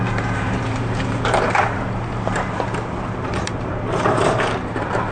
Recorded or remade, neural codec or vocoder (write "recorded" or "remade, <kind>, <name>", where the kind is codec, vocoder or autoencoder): remade, vocoder, BigVGAN v2